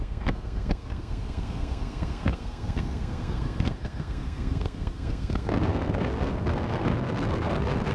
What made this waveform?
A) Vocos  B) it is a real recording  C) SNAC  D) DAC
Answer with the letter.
C